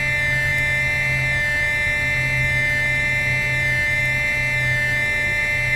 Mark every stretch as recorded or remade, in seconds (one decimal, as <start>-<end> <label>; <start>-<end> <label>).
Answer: 0.0-5.8 recorded